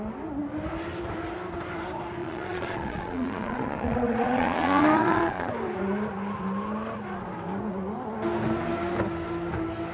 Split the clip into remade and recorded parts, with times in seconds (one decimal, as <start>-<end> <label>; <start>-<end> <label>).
0.0-2.2 recorded; 2.2-5.5 remade; 5.5-9.9 recorded